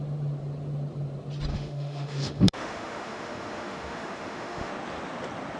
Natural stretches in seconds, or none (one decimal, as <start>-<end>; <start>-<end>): 0.0-1.5; 4.7-5.6